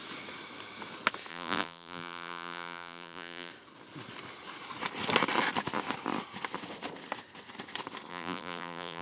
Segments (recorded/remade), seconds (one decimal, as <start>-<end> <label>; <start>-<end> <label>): 0.0-1.3 recorded; 1.3-3.5 remade; 3.5-8.1 recorded; 8.1-9.0 remade